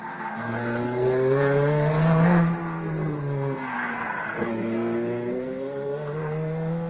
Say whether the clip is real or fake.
fake